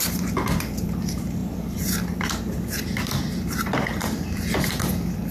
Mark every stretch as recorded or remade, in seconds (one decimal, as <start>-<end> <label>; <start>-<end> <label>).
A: 0.0-5.3 remade